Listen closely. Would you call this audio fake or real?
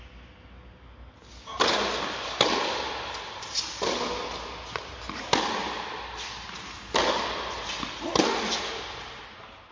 real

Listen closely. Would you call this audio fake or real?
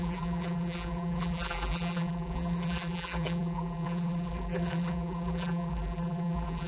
fake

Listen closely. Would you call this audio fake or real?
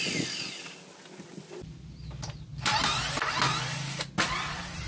real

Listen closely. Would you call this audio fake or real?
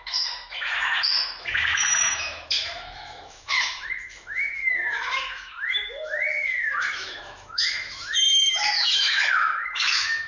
fake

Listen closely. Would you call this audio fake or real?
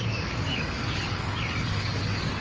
fake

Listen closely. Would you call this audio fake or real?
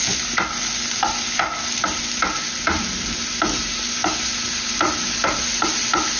real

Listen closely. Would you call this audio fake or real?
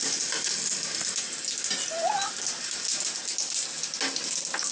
real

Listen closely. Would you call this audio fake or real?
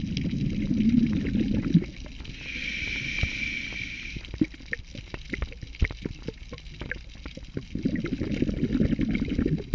real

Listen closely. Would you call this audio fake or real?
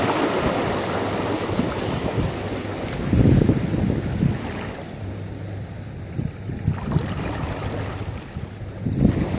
real